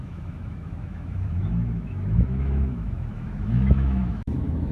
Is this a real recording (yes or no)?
no